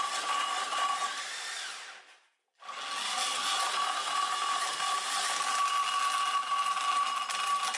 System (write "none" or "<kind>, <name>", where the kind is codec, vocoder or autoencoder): none